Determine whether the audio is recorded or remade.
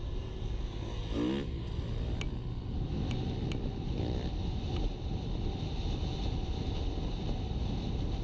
recorded